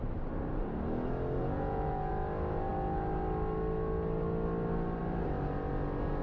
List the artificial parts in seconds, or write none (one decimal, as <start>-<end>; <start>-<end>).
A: 1.4-2.1